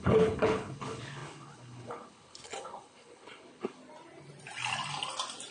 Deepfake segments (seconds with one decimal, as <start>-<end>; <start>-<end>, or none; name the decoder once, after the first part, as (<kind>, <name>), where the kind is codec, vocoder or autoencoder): 0.0-3.8 (codec, HILCodec)